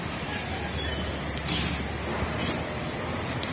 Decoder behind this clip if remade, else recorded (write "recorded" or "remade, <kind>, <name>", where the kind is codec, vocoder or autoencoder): recorded